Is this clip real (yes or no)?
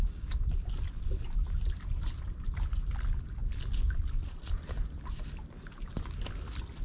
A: yes